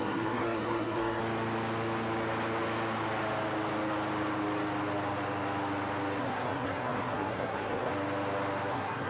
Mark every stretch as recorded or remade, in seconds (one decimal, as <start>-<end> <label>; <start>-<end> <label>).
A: 0.0-1.2 remade; 1.2-6.2 recorded; 6.2-7.9 remade; 7.9-8.7 recorded; 8.7-9.1 remade